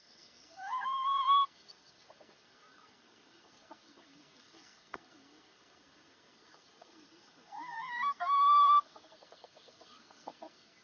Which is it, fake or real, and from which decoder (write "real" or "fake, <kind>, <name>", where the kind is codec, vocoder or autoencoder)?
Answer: fake, codec, SNAC